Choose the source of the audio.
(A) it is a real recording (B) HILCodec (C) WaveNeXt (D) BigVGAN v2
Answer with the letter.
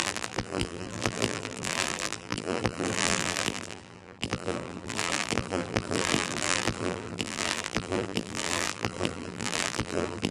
D